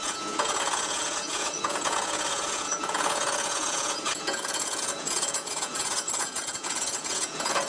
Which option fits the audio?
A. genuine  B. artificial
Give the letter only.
B